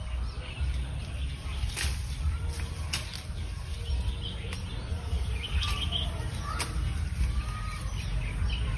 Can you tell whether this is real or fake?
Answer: real